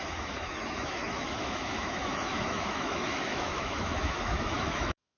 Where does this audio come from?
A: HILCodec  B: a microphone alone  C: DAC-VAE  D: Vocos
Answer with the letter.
C